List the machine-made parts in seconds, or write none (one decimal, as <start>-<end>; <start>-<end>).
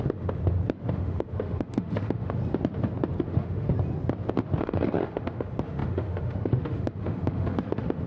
0.0-0.4; 0.9-2.4; 3.2-3.7; 4.6-8.1